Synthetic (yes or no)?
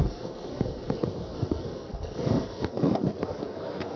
yes